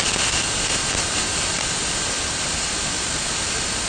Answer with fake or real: real